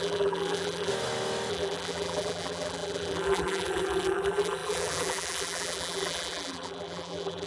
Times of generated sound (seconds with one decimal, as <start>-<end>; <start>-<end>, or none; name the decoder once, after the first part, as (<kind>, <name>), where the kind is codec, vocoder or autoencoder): 0.0-0.9 (vocoder, BigVGAN v2); 1.5-7.5